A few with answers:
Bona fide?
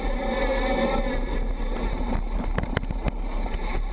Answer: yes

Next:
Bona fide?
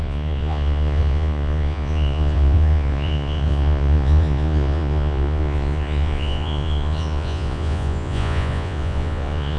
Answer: no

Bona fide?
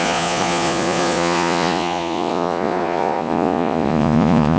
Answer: no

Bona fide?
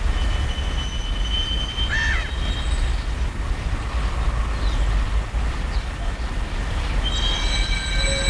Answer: yes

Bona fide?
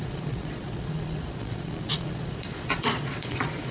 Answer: no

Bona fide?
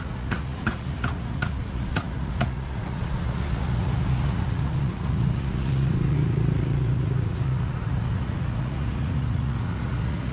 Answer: no